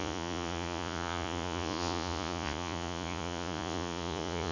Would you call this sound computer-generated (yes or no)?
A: yes